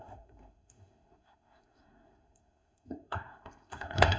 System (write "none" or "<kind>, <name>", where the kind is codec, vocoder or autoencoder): codec, SNAC